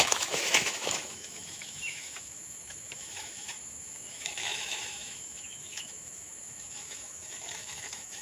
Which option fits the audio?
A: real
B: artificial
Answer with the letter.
B